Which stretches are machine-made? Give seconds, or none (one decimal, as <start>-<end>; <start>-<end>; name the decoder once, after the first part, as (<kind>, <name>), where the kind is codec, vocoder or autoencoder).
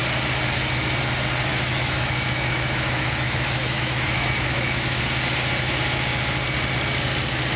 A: 1.5-5.0 (autoencoder, DAC-VAE)